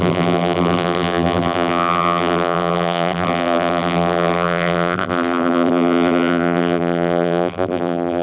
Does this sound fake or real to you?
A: fake